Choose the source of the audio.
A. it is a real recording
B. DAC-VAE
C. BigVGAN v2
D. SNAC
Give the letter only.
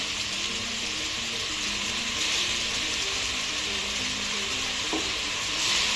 C